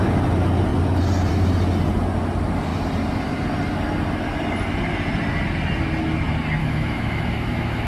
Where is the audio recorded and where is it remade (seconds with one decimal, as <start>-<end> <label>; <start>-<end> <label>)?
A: 0.0-6.6 recorded; 6.6-7.9 remade